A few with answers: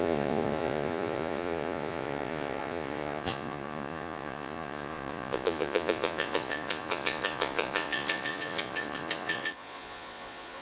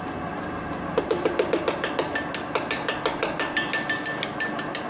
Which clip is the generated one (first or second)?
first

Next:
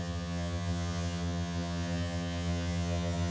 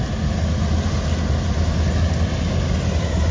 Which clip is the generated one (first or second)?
first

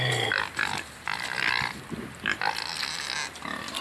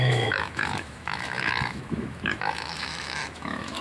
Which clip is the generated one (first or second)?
second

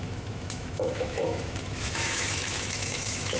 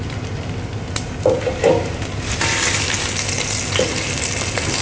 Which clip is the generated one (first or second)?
first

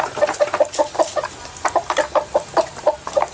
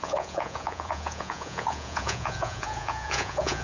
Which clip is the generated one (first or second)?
second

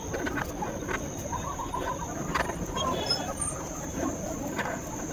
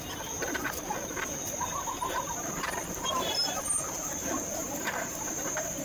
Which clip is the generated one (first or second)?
second